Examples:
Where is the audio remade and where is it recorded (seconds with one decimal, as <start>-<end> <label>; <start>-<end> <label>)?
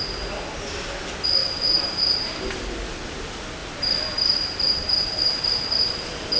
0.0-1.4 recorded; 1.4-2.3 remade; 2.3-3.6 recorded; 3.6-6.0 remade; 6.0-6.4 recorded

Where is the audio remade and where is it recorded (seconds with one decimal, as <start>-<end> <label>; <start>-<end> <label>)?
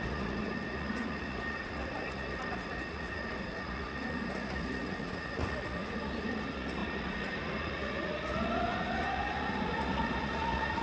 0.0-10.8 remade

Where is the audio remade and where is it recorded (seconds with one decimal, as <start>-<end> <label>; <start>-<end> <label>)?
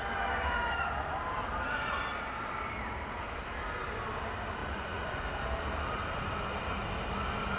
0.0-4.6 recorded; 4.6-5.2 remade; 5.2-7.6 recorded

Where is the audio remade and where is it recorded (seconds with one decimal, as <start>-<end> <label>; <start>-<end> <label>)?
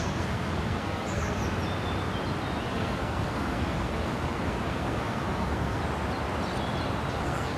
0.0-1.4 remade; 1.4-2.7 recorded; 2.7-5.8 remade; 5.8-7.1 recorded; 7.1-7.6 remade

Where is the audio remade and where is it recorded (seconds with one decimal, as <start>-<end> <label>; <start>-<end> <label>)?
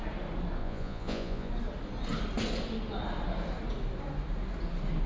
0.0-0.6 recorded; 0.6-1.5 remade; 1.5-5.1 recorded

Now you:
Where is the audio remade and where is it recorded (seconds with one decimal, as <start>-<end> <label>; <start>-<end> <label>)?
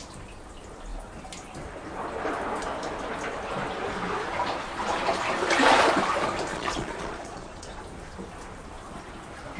0.0-6.5 recorded; 6.5-7.8 remade; 7.8-9.6 recorded